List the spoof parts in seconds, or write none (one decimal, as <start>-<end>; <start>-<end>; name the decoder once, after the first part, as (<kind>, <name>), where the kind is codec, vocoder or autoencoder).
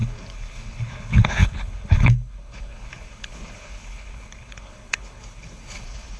0.0-6.2 (codec, HILCodec)